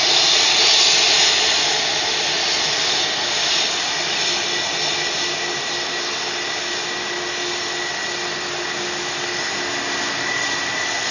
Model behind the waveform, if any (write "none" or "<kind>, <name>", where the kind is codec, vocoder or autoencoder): none